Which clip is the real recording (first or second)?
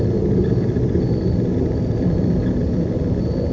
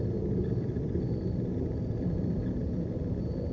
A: first